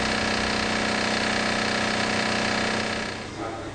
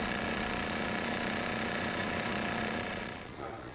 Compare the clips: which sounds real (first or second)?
first